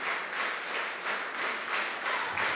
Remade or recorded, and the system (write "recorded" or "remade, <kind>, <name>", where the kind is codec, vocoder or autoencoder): recorded